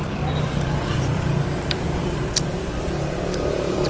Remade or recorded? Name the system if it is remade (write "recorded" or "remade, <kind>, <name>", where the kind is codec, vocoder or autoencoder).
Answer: remade, vocoder, BigVGAN v2